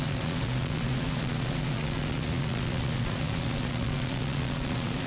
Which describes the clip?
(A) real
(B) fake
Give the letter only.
B